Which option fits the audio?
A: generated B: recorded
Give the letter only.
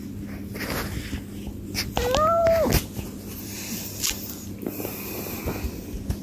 B